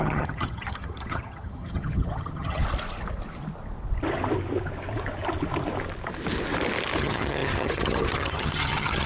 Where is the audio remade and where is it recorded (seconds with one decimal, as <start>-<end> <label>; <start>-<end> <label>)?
0.0-2.6 remade; 2.6-7.0 recorded; 7.0-9.1 remade